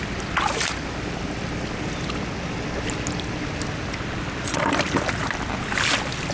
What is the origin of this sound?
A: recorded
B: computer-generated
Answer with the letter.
A